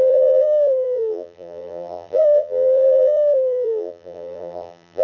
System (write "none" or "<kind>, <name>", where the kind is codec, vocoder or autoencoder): vocoder, BigVGAN v2